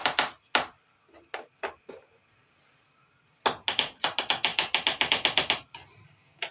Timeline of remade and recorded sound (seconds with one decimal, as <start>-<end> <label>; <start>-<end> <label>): 0.0-6.5 recorded